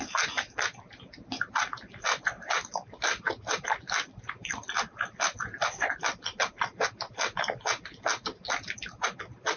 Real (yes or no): yes